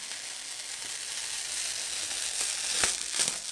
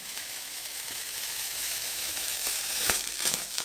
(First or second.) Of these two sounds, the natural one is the first